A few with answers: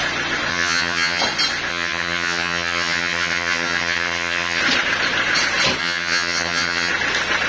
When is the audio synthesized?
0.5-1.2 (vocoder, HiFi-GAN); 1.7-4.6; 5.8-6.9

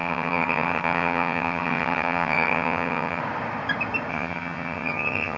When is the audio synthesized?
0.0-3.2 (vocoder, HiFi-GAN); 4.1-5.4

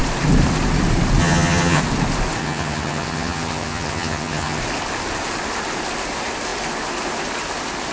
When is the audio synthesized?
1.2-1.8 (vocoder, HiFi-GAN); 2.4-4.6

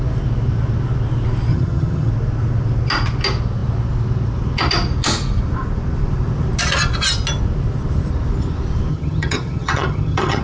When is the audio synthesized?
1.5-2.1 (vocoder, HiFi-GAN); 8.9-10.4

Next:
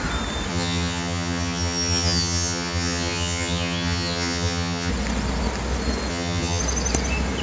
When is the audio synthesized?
0.5-4.9 (vocoder, HiFi-GAN); 6.1-6.6

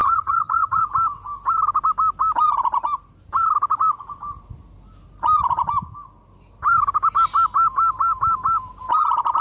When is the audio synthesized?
0.0-0.8 (vocoder, HiFi-GAN)

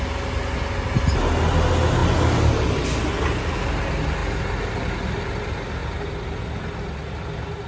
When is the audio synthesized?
none